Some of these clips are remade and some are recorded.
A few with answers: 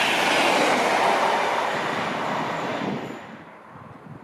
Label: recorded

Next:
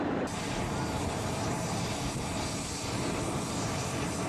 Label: recorded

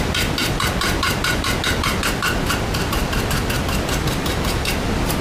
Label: recorded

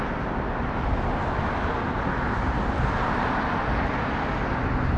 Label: recorded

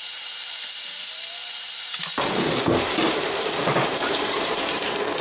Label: remade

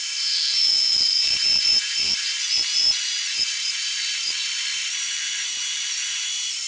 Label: remade